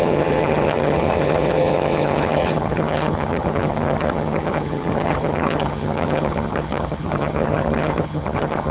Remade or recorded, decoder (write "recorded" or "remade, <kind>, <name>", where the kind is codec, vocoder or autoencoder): remade, vocoder, HiFi-GAN